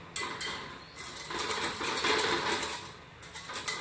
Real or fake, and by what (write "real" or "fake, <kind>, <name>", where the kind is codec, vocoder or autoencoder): real